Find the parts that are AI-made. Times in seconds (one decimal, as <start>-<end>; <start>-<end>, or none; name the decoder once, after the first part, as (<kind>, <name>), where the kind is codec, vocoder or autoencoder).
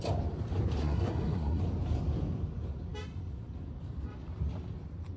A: 0.8-1.6 (codec, SNAC)